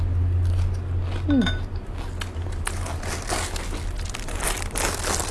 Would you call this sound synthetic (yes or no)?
no